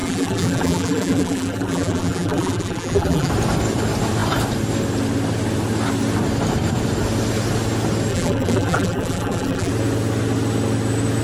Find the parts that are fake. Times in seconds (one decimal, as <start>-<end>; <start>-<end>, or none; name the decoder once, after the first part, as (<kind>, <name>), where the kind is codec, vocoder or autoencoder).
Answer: 0.0-3.3 (vocoder, BigVGAN v2); 8.1-9.7